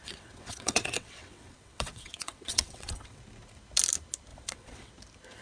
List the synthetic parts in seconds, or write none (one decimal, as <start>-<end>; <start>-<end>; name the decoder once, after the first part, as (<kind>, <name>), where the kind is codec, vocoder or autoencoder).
0.0-3.2 (vocoder, WaveNeXt); 4.3-4.9